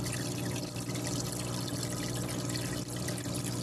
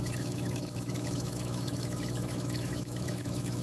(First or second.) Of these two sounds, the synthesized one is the second